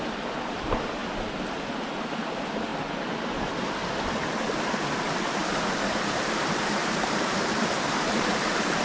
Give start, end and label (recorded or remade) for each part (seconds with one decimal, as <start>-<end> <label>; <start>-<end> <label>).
0.0-5.4 recorded; 5.4-8.8 remade